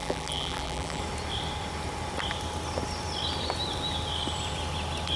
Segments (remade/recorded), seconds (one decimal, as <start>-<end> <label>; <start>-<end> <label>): 0.0-1.0 remade; 1.0-5.2 recorded

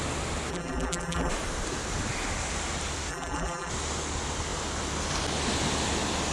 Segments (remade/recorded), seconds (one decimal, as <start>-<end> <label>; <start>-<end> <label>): 0.0-0.5 recorded; 0.5-1.3 remade; 1.3-3.1 recorded; 3.1-3.7 remade; 3.7-6.3 recorded

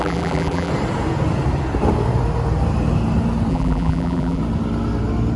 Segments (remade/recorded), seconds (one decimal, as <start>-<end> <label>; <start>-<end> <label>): 0.0-0.7 remade; 0.7-3.5 recorded; 3.5-4.4 remade; 4.4-5.4 recorded

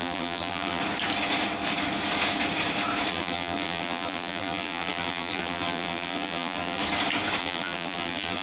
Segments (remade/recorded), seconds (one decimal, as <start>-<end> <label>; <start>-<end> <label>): 0.0-0.8 remade; 0.8-3.1 recorded; 3.1-6.8 remade; 6.8-7.4 recorded; 7.4-8.4 remade

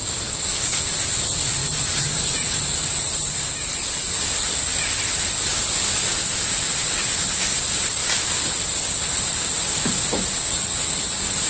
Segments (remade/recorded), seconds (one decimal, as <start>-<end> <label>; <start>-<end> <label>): 0.0-1.6 recorded; 1.6-3.5 remade; 3.5-6.2 recorded; 6.2-7.4 remade; 7.4-11.5 recorded

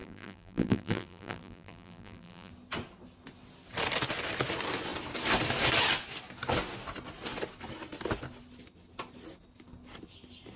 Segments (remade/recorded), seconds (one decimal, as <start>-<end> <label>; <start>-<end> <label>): 0.0-2.5 remade; 2.5-10.6 recorded

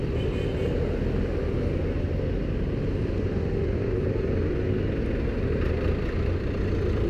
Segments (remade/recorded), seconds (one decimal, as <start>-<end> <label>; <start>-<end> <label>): 0.0-7.1 recorded

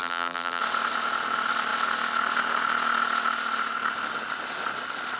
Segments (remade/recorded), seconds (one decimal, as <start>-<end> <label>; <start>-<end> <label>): 0.0-0.6 remade; 0.6-5.2 recorded